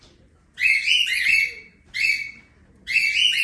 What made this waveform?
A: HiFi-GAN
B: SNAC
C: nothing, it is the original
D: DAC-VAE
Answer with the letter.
C